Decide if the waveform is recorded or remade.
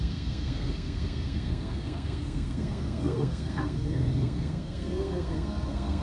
remade